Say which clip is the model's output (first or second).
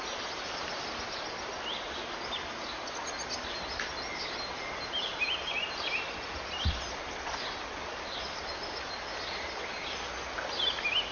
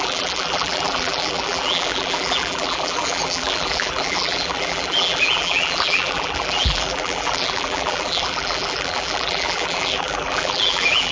second